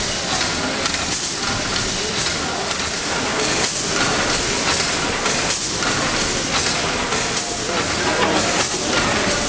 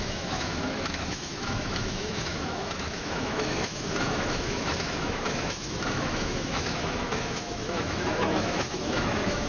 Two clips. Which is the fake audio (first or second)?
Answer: second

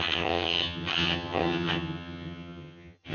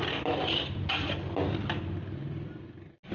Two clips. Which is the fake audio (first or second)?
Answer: first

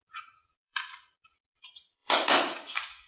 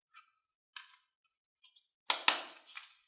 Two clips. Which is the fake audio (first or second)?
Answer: first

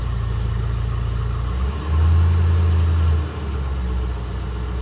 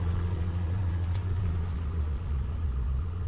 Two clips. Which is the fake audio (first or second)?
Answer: second